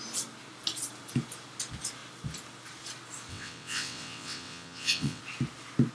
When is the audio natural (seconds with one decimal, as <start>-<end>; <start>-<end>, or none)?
0.0-3.3; 5.2-5.9